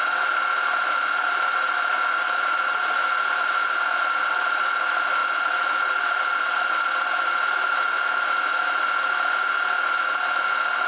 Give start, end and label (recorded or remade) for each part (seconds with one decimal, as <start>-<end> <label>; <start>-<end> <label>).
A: 0.0-10.9 recorded